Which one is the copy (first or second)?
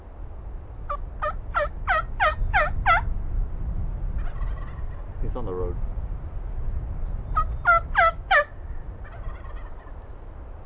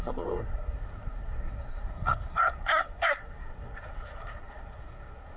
second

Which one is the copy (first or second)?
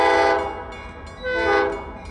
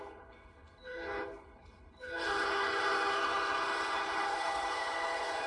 second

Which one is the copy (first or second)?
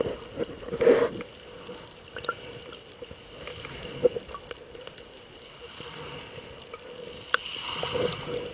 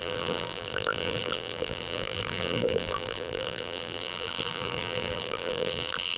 second